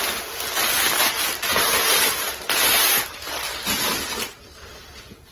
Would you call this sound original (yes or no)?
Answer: yes